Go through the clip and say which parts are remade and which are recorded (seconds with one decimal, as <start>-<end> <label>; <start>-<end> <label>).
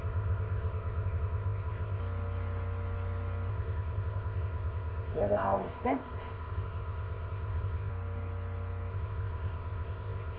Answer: 0.0-2.0 remade; 2.0-3.5 recorded; 3.5-7.9 remade; 7.9-8.9 recorded; 8.9-10.4 remade